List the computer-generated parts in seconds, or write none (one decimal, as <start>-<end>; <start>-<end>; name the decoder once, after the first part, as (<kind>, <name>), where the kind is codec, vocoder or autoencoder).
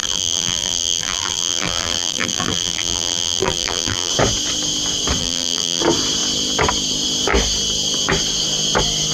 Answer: 0.0-4.1 (vocoder, BigVGAN v2); 5.2-5.8